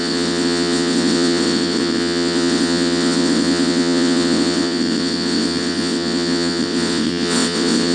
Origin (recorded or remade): remade